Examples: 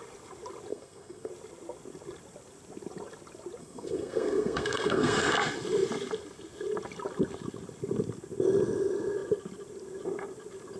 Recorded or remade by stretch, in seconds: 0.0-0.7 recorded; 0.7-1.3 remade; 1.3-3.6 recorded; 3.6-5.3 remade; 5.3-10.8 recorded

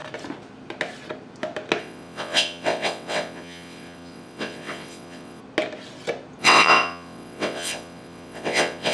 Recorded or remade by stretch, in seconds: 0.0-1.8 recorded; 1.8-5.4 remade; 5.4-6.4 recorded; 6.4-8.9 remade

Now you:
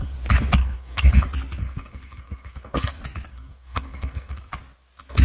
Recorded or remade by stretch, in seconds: 0.0-0.6 recorded; 0.6-1.1 remade; 1.1-1.6 recorded; 1.6-2.9 remade; 2.9-3.3 recorded; 3.3-4.5 remade; 4.5-5.2 recorded

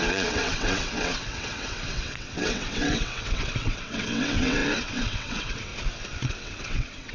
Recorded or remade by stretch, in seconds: 0.0-5.7 remade; 5.7-6.2 recorded; 6.2-7.1 remade

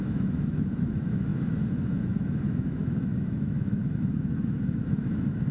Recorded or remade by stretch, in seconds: 0.0-5.5 remade

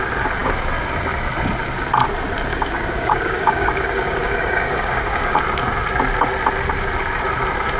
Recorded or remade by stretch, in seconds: 0.0-2.5 recorded; 2.5-5.4 remade; 5.4-7.8 recorded